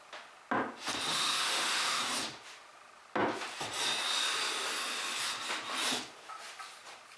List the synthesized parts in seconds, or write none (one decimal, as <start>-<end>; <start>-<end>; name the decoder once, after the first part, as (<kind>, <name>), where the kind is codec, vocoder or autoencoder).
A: 1.1-2.0 (autoencoder, DAC-VAE)